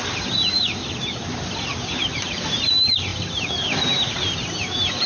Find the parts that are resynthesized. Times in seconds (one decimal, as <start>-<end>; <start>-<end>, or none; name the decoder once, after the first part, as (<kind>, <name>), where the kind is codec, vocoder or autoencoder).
2.0-2.7 (vocoder, BigVGAN v2); 3.1-4.5